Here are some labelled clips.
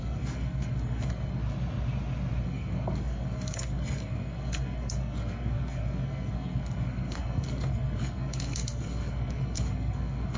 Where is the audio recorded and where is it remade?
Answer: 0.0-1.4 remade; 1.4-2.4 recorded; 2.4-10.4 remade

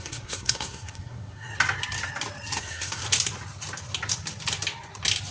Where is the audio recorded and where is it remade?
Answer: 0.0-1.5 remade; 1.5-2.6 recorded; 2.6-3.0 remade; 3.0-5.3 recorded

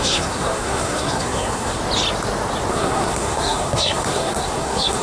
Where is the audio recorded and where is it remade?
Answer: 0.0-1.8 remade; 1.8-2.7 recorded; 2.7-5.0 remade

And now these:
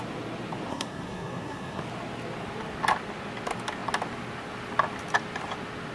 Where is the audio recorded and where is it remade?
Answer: 0.0-0.7 recorded; 0.7-1.8 remade; 1.8-5.9 recorded

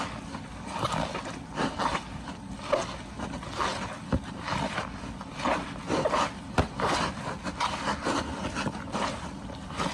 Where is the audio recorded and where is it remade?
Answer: 0.0-9.9 recorded